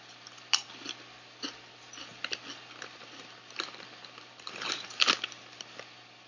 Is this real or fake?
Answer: real